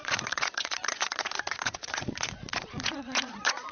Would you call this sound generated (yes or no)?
yes